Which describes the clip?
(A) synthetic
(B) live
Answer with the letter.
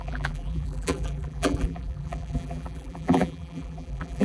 A